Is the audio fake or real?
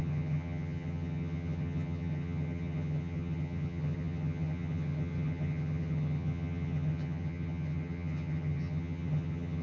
fake